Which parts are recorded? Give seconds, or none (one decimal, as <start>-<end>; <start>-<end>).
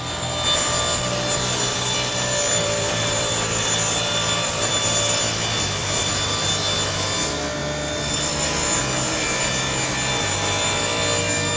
0.0-2.5; 4.8-5.8; 6.5-7.6; 8.8-11.6